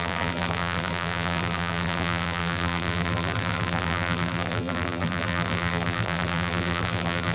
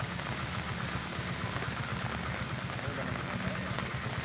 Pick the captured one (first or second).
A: second